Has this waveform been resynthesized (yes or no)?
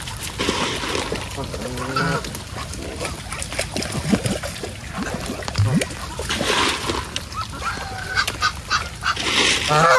no